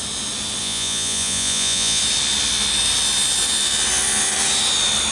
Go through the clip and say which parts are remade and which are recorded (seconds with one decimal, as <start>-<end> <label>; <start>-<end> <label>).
0.0-0.6 recorded; 0.6-2.0 remade; 2.0-5.1 recorded